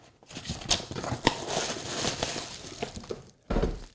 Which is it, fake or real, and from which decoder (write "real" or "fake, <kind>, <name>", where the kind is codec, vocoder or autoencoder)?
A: fake, vocoder, BigVGAN v2